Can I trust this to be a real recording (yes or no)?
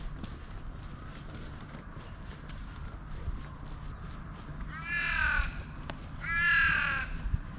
yes